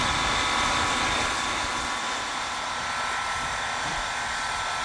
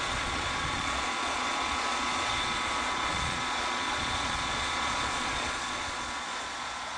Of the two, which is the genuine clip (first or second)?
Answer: first